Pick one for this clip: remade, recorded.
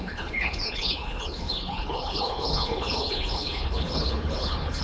remade